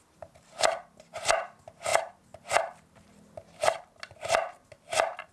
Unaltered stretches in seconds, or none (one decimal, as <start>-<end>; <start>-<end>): 0.0-5.3

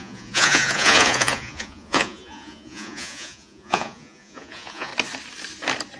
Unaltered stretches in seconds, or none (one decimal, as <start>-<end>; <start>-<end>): 4.9-6.0

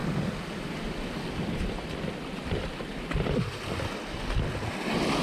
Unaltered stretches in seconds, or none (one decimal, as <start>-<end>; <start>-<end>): 0.0-5.2

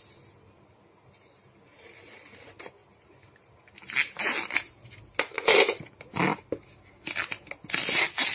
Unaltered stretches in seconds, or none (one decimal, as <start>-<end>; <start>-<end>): 0.0-8.3

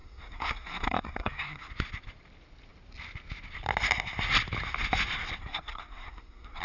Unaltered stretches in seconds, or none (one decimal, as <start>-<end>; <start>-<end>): 1.7-5.4